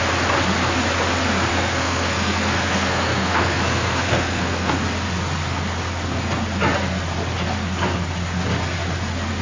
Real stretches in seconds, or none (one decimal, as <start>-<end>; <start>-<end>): 0.0-1.5; 4.7-9.4